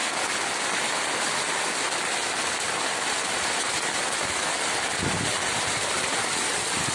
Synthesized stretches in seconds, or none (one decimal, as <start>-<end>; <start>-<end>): none